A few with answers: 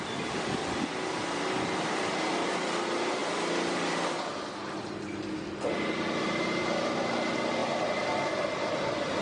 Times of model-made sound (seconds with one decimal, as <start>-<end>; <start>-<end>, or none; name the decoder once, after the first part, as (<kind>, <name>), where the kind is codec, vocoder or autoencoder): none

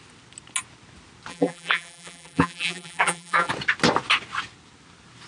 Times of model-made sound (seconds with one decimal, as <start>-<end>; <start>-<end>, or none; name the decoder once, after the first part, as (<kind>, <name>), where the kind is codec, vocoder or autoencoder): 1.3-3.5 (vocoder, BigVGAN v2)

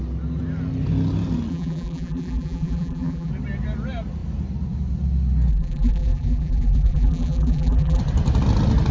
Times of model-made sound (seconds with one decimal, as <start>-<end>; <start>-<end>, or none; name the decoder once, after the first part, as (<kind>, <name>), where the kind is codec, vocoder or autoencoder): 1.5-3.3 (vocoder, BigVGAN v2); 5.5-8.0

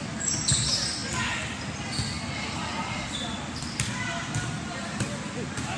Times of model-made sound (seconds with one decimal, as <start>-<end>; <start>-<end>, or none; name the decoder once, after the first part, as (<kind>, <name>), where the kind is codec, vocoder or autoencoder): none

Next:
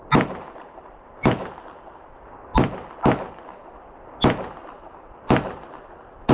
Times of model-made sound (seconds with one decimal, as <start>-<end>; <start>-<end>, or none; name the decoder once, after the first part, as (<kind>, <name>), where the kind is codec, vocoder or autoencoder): 0.6-1.5 (vocoder, BigVGAN v2)